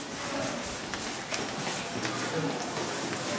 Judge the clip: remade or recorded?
recorded